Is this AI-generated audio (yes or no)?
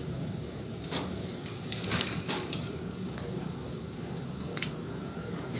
yes